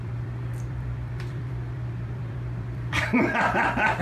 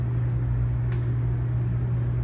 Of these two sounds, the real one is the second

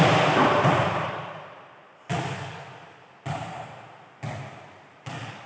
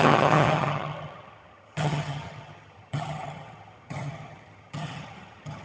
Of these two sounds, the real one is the first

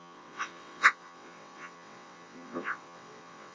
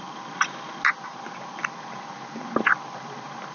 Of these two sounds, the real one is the second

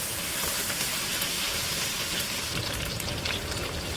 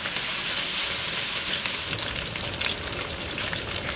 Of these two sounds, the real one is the second